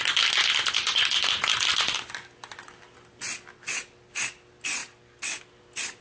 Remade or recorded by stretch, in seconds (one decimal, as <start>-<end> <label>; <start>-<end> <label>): 0.0-6.0 recorded